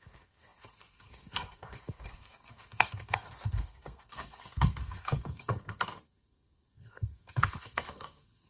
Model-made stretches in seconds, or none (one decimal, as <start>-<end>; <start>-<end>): 0.0-8.5